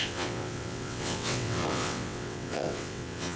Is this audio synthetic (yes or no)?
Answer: yes